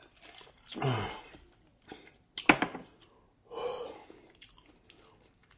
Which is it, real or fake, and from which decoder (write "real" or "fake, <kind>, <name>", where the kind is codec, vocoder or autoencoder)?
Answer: real